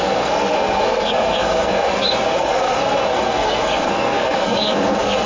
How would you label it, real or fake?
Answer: fake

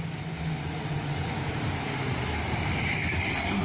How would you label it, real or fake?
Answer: real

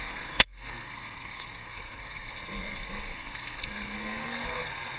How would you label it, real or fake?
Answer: fake